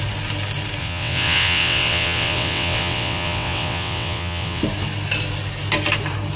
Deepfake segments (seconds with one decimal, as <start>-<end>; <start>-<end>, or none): 0.8-4.6